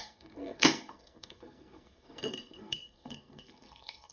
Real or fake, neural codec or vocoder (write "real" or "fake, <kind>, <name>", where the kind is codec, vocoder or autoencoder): fake, codec, SNAC